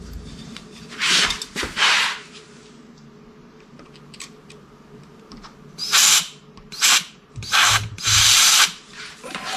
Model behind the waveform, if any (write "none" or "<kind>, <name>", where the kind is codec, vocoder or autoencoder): vocoder, BigVGAN v2